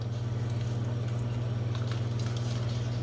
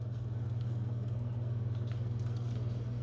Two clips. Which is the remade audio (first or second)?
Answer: second